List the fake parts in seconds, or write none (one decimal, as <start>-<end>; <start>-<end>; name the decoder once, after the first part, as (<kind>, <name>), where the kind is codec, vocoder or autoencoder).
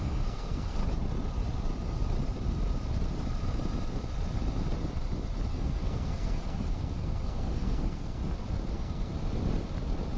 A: 0.0-0.8 (codec, SNAC); 5.5-8.2; 8.7-9.1